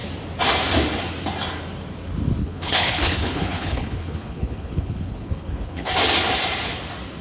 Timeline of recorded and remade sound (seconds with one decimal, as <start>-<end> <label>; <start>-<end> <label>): 0.0-2.4 recorded; 2.4-5.9 remade; 5.9-7.2 recorded

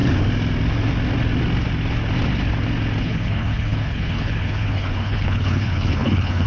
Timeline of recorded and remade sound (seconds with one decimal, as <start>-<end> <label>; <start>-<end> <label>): 0.0-3.0 recorded; 3.0-6.5 remade

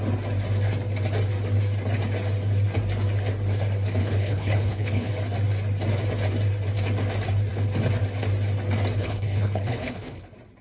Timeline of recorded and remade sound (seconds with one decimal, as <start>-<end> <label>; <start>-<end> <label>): 0.0-4.0 recorded; 4.0-5.1 remade; 5.1-9.0 recorded; 9.0-10.2 remade; 10.2-10.6 recorded

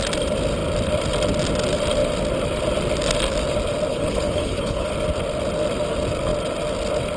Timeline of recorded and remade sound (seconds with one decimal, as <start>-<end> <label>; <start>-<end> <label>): 0.0-3.9 recorded; 3.9-4.9 remade; 4.9-7.2 recorded